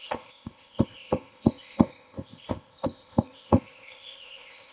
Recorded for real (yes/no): no